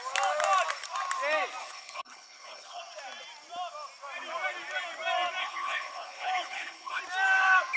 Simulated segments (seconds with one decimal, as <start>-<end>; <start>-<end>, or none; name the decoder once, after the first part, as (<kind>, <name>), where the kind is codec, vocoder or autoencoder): 1.6-2.8 (codec, HILCodec); 5.4-7.0

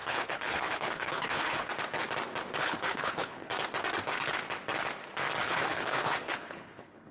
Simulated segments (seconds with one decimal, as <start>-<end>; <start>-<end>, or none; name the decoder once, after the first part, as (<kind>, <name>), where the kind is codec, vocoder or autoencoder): 0.0-1.7 (codec, HILCodec); 2.6-3.5; 5.4-7.1

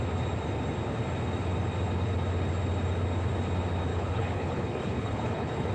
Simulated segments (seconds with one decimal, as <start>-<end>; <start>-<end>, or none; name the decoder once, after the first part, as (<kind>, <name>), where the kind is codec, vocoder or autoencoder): 3.9-5.7 (codec, HILCodec)

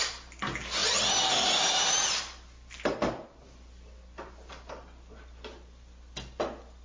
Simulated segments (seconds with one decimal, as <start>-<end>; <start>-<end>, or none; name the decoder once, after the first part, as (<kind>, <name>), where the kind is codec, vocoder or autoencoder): none

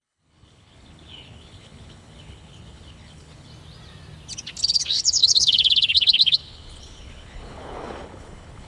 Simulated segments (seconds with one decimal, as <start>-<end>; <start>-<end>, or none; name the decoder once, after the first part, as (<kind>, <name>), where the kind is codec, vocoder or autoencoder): 0.0-3.5 (codec, HILCodec); 4.6-8.7